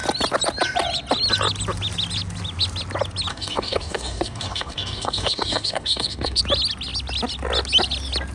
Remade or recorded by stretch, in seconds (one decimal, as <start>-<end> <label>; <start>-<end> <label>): 0.0-3.3 recorded; 3.3-6.4 remade; 6.4-8.3 recorded